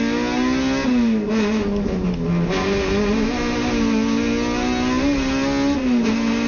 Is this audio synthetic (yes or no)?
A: no